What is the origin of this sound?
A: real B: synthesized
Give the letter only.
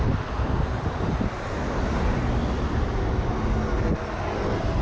A